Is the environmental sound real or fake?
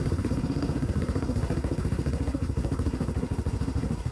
fake